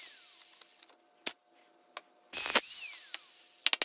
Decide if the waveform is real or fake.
real